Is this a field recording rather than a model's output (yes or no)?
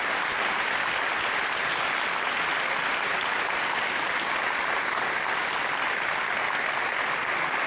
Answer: yes